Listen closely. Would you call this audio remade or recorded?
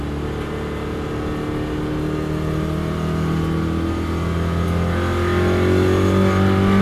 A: recorded